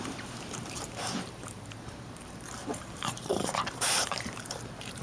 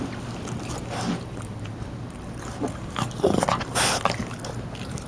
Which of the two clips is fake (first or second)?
first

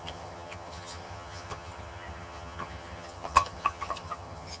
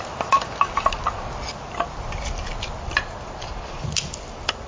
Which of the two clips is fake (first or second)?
first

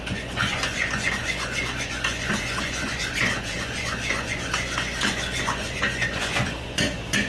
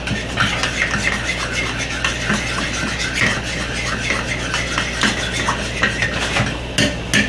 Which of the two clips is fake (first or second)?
first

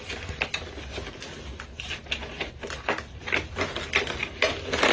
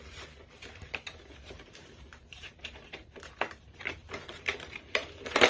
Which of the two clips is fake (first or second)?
second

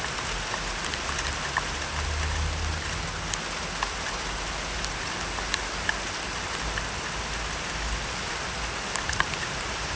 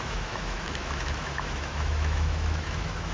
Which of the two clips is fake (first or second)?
second